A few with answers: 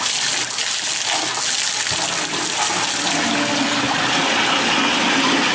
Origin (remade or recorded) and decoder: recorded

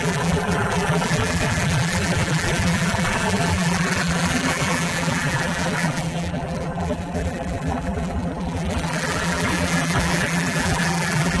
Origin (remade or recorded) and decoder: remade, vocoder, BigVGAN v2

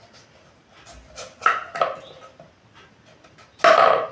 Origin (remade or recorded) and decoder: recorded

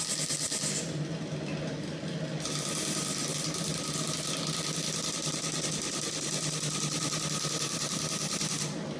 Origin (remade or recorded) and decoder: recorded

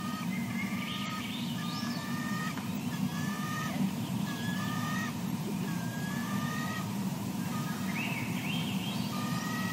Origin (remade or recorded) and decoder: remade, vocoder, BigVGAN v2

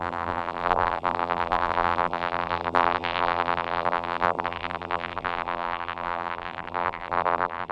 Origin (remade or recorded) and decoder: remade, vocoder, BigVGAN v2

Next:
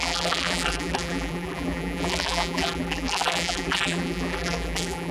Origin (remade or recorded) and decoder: remade, vocoder, BigVGAN v2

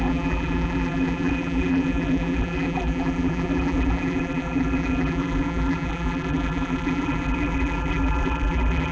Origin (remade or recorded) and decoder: remade, vocoder, BigVGAN v2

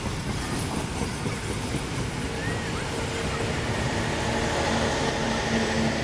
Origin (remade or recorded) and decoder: recorded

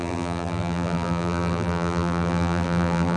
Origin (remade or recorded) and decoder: remade, vocoder, BigVGAN v2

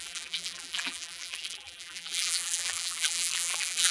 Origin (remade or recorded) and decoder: remade, vocoder, BigVGAN v2